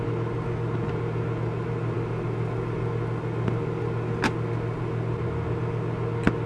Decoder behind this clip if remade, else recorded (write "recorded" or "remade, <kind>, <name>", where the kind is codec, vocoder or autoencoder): recorded